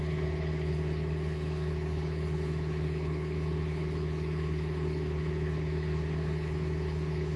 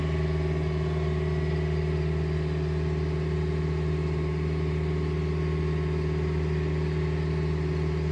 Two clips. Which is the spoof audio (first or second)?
first